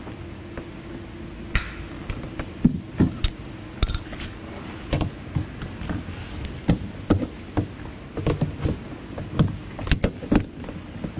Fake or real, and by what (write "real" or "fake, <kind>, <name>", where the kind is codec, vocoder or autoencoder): real